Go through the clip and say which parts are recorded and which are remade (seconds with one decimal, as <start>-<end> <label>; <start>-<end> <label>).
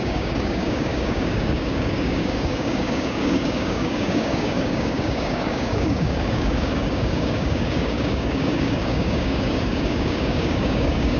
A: 0.0-11.2 remade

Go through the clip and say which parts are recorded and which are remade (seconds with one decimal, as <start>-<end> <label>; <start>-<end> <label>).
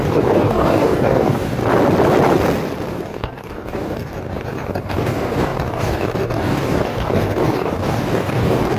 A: 0.0-1.6 remade; 1.6-2.9 recorded; 2.9-8.8 remade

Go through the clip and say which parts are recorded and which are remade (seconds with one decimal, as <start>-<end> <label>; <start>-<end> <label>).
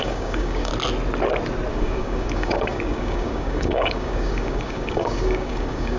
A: 0.0-0.7 remade; 0.7-1.7 recorded; 1.7-6.0 remade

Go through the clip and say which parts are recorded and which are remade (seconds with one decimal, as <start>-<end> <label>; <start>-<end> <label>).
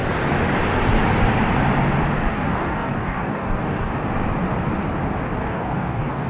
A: 0.0-2.3 recorded; 2.3-3.9 remade; 3.9-5.4 recorded; 5.4-6.3 remade